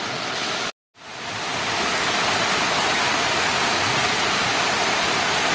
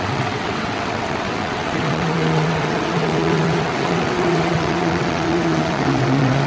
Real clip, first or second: first